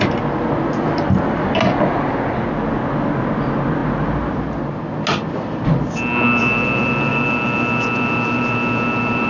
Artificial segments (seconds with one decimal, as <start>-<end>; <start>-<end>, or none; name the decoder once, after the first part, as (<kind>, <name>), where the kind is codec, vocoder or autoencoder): none